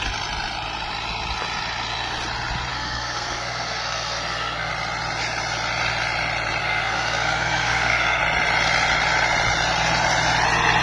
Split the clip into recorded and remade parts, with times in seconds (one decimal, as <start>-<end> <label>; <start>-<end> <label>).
0.0-2.7 recorded; 2.7-4.7 remade; 4.7-6.6 recorded; 6.6-8.2 remade; 8.2-10.8 recorded